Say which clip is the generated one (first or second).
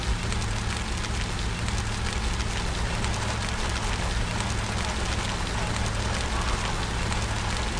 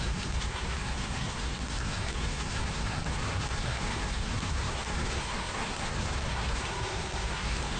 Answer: second